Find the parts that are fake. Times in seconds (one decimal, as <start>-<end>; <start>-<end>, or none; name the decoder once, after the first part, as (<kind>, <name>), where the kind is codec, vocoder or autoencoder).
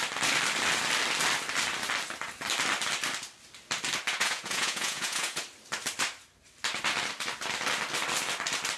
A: 4.1-5.4 (vocoder, Vocos)